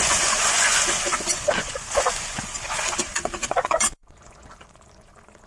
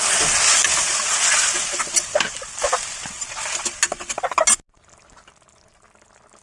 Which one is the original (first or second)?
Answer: second